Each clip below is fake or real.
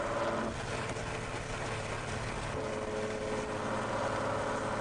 real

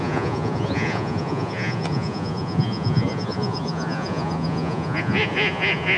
fake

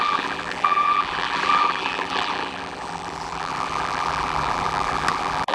fake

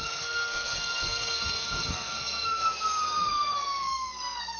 fake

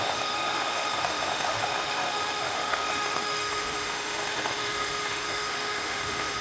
fake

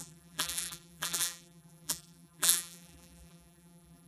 fake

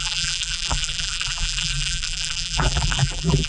fake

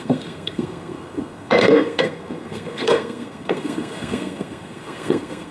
fake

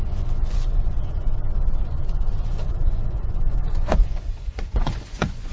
fake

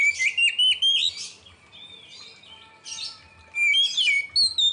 real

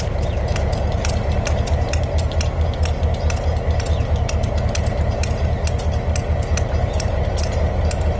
real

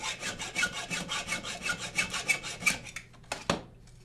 real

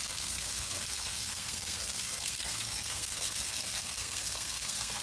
fake